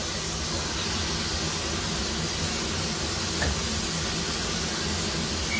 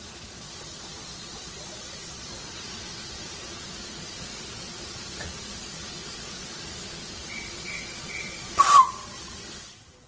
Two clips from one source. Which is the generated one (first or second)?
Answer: second